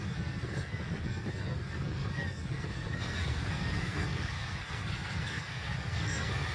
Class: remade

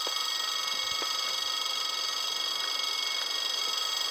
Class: recorded